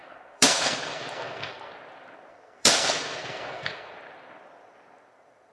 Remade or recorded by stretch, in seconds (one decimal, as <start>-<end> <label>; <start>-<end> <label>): 0.0-1.7 remade; 1.7-2.3 recorded; 2.3-3.9 remade; 3.9-5.5 recorded